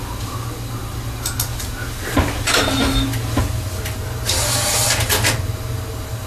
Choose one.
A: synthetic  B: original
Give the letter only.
B